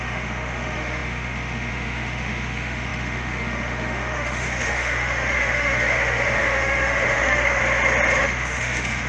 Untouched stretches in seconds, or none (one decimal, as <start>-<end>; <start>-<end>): 7.6-8.2